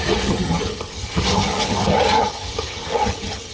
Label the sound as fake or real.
fake